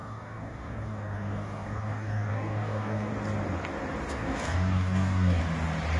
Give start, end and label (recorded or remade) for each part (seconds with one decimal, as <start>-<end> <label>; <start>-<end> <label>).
0.0-3.1 remade; 3.1-4.1 recorded; 4.1-5.4 remade; 5.4-6.0 recorded